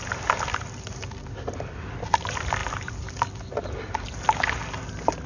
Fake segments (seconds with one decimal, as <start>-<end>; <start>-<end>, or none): none

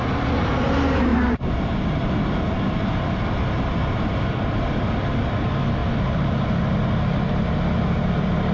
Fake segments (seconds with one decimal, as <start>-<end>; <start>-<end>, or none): none